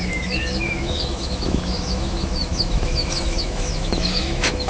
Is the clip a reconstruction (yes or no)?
yes